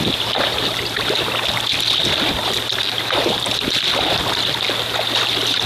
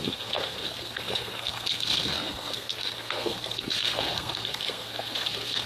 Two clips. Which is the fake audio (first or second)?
second